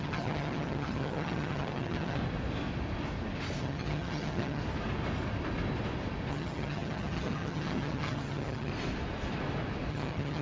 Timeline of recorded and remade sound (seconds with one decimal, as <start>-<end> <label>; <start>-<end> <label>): 0.0-2.2 remade; 2.2-3.6 recorded; 3.6-4.6 remade; 4.6-6.3 recorded; 6.3-8.7 remade; 8.7-9.9 recorded; 9.9-10.4 remade